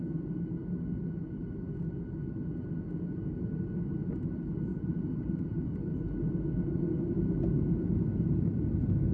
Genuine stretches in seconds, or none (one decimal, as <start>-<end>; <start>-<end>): 0.0-4.7; 5.9-9.1